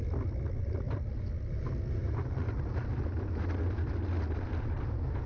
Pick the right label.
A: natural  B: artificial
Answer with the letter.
A